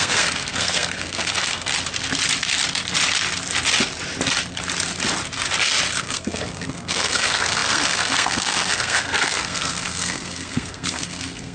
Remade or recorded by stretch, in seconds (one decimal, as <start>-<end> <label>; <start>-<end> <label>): 0.0-1.7 remade; 1.7-6.0 recorded; 6.0-11.5 remade